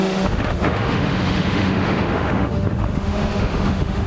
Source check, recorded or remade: remade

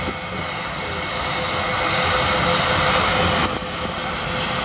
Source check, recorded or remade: recorded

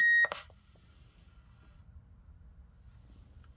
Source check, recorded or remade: recorded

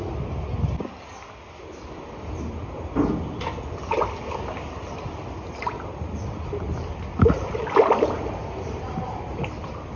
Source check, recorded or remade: recorded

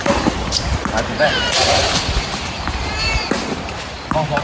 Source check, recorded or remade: remade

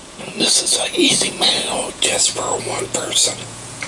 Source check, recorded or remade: remade